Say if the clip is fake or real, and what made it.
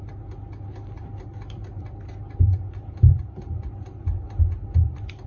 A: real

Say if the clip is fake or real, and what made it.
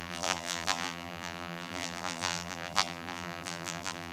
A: fake, vocoder, BigVGAN v2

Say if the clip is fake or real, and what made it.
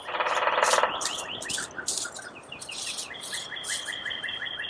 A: real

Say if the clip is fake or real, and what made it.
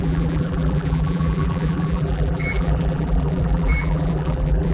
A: fake, vocoder, BigVGAN v2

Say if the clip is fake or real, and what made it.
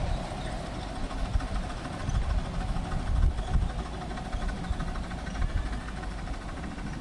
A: real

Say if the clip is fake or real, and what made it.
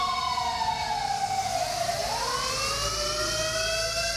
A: real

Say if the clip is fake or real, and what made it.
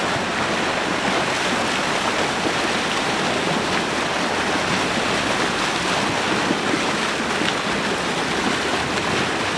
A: real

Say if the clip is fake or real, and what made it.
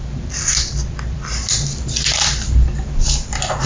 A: fake, vocoder, BigVGAN v2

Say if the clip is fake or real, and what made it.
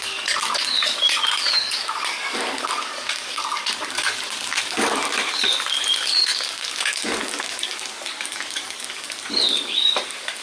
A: fake, codec, DAC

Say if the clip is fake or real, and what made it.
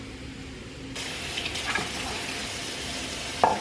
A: real